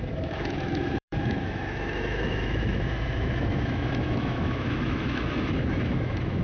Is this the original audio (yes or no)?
no